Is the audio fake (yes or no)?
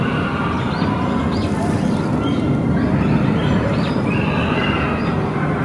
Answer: no